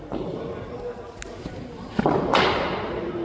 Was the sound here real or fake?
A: real